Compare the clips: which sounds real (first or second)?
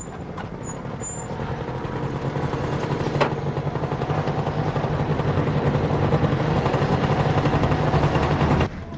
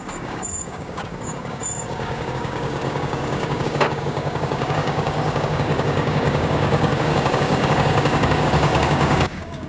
first